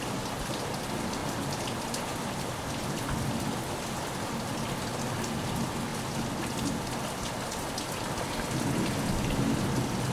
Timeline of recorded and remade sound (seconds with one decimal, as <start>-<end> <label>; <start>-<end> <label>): 0.0-1.2 remade; 1.2-5.4 recorded; 5.4-5.9 remade; 5.9-10.1 recorded